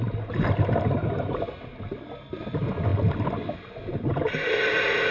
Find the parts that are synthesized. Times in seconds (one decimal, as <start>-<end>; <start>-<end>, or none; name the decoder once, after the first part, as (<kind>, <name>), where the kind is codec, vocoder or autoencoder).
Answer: none